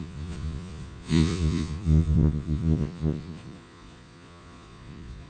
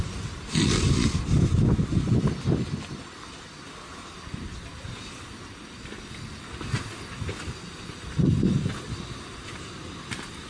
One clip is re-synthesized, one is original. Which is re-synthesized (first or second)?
first